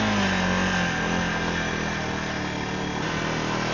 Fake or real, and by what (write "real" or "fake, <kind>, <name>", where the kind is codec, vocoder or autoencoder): real